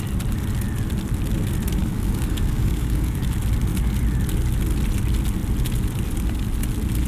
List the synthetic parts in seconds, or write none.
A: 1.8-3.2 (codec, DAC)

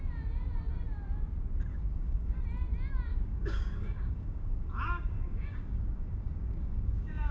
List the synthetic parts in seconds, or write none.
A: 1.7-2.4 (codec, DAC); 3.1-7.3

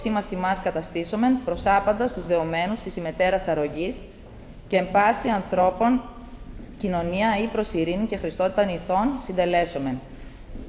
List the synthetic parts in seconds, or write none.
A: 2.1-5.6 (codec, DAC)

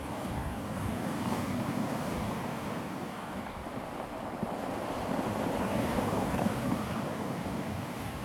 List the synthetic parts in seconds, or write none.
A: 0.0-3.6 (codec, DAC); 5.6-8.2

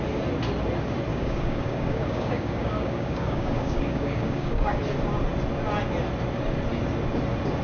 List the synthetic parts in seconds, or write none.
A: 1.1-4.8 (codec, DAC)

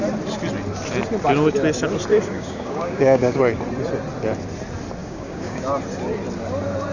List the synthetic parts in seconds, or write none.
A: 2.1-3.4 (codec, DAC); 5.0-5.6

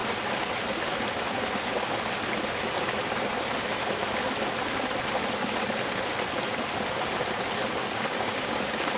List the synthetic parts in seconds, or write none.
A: 7.8-9.0 (codec, DAC)